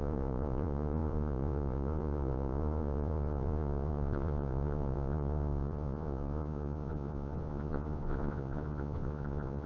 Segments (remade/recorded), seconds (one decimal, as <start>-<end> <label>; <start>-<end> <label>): 0.0-9.7 remade